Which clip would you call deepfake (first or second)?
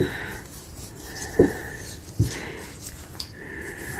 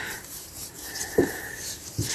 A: second